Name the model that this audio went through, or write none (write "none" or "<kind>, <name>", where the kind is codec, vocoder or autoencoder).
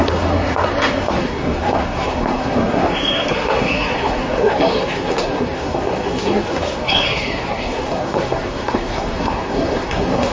codec, SNAC